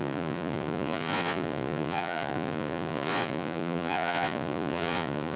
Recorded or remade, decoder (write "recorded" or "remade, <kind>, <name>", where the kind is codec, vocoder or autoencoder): remade, vocoder, Vocos